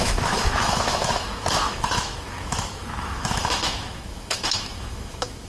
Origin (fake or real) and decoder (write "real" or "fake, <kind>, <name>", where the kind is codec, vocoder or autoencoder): fake, autoencoder, DAC-VAE